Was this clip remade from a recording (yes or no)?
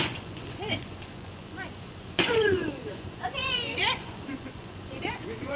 yes